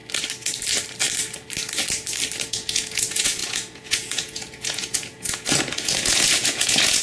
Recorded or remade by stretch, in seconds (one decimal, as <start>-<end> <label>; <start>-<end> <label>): 0.0-2.4 recorded; 2.4-7.0 remade